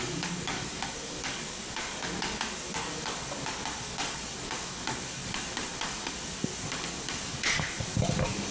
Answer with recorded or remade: remade